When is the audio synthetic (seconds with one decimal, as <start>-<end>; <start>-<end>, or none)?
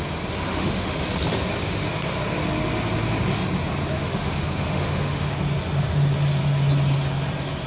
0.5-1.1; 4.0-5.3